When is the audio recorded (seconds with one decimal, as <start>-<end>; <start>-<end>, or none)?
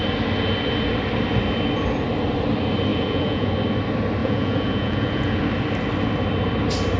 0.0-2.9; 3.5-4.2; 5.4-7.0